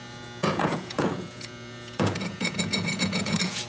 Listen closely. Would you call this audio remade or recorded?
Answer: remade